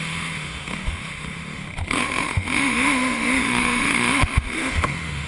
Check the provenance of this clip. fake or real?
fake